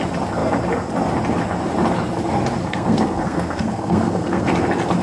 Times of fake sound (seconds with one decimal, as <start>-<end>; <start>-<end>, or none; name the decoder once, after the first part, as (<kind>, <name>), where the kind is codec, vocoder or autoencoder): 2.6-4.5 (codec, SNAC)